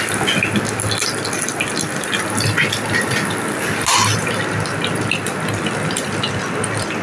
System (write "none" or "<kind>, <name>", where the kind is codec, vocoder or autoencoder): none